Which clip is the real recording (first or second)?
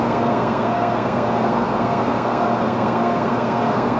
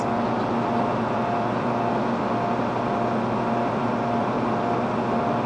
second